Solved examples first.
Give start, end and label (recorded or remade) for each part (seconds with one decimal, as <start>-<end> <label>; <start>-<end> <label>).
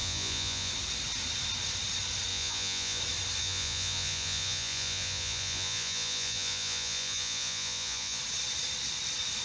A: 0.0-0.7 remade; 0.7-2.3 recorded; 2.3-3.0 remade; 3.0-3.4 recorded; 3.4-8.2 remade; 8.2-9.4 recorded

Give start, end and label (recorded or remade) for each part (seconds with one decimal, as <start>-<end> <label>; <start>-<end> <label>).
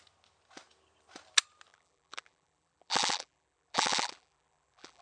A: 0.0-1.7 recorded; 1.7-5.0 remade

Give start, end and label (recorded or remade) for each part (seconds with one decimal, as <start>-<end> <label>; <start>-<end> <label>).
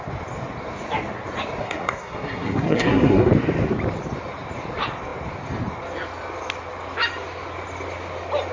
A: 0.0-1.6 recorded; 1.6-3.3 remade; 3.3-8.5 recorded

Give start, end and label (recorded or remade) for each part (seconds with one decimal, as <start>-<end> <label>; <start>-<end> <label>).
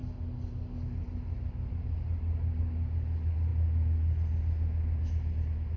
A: 0.0-2.6 remade; 2.6-5.8 recorded